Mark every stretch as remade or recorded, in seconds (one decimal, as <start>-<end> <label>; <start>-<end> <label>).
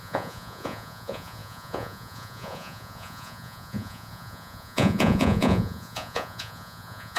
0.0-7.2 remade